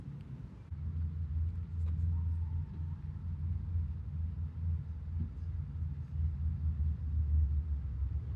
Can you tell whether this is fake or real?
real